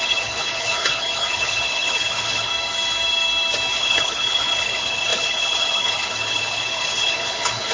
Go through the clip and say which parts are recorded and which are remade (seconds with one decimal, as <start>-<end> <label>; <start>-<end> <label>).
0.0-2.5 remade; 2.5-3.7 recorded; 3.7-7.7 remade